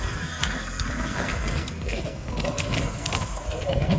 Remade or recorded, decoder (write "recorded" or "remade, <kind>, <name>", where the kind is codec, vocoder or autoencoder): remade, codec, SNAC